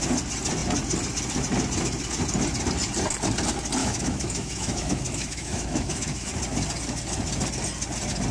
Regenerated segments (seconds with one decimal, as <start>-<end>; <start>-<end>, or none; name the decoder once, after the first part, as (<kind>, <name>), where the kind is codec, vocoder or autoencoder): 3.8-6.3 (autoencoder, DAC-VAE)